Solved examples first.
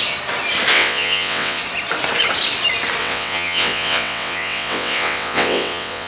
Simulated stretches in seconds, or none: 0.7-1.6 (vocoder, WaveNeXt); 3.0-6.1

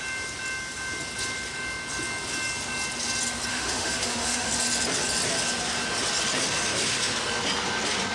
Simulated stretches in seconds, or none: 3.5-4.5 (autoencoder, DAC-VAE)

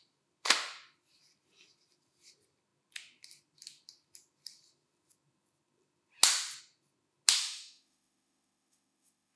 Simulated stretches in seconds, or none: 7.4-9.4 (autoencoder, DAC-VAE)

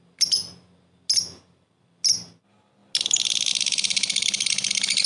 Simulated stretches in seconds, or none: none

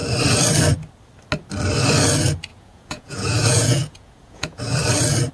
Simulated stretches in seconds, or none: 2.5-4.6 (vocoder, Vocos)

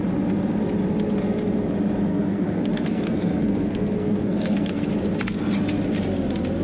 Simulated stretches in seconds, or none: 2.1-4.9 (codec, SNAC)

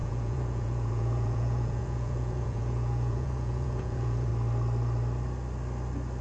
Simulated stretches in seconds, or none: 0.0-4.3 (vocoder, Vocos)